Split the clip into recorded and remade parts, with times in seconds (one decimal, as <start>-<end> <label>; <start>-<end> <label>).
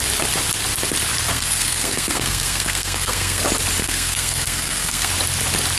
0.0-1.3 recorded; 1.3-3.4 remade; 3.4-3.8 recorded; 3.8-5.1 remade; 5.1-5.8 recorded